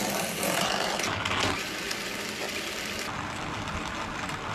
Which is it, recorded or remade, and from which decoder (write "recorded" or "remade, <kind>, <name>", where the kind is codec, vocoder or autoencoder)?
recorded